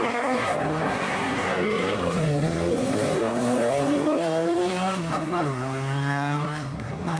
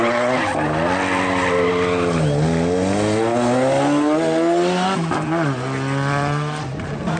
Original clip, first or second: second